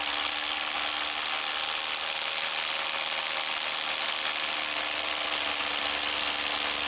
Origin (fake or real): real